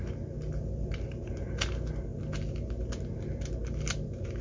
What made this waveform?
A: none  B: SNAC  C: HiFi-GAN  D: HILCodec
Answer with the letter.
A